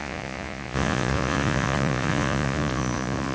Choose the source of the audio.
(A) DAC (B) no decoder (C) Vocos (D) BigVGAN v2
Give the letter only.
C